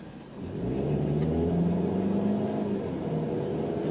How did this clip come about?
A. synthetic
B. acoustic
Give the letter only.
B